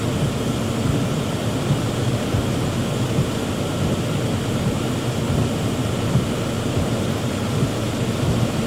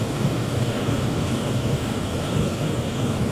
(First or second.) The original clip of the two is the first